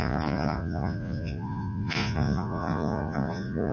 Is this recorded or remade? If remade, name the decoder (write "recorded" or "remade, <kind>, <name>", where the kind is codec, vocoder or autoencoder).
remade, vocoder, Vocos